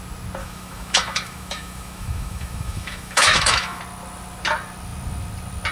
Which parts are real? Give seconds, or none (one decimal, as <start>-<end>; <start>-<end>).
0.0-0.4; 3.8-5.7